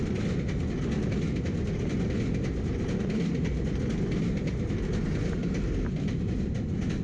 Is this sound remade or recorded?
recorded